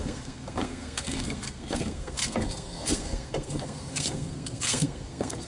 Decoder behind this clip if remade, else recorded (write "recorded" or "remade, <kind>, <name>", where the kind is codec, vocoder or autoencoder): remade, codec, SNAC